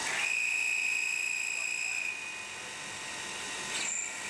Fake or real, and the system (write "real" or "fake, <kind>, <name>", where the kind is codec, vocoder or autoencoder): real